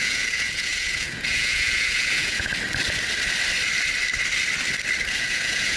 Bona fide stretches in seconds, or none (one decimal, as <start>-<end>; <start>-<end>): 2.5-5.2